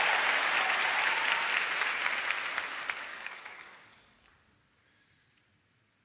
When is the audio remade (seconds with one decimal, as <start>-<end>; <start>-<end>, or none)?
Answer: 3.1-4.3